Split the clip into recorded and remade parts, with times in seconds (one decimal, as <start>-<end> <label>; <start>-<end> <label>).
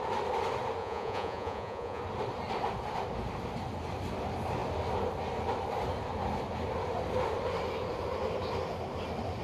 0.0-0.8 recorded; 0.8-2.0 remade; 2.0-9.4 recorded